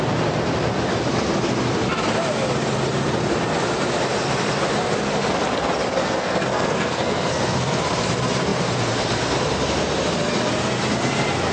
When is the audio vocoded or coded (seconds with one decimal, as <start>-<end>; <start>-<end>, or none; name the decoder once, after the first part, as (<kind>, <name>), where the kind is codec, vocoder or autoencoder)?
6.0-7.8 (codec, SNAC)